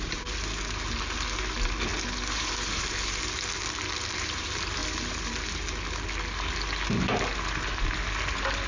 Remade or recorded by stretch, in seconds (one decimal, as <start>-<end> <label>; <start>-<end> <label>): 0.0-8.7 recorded